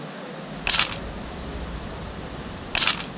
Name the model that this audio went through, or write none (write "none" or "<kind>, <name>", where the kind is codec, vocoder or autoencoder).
none